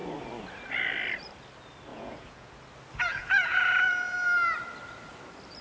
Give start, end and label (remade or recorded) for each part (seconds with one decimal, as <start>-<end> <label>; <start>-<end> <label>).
0.0-1.9 recorded; 1.9-2.5 remade; 2.5-3.1 recorded; 3.1-3.9 remade; 3.9-5.6 recorded